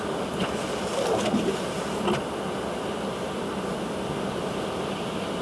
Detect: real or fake real